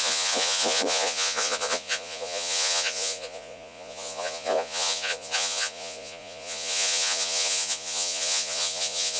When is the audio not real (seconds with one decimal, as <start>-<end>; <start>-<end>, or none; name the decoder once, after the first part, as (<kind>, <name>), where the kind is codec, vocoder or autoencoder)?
0.0-9.2 (vocoder, Vocos)